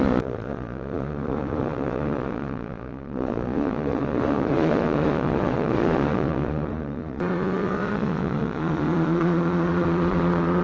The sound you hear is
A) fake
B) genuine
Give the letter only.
A